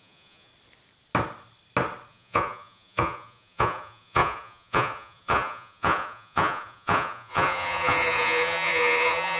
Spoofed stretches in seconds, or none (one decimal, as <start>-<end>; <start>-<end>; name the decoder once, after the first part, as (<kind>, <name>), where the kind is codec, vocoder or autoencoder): 0.0-0.5 (vocoder, Vocos); 2.1-9.4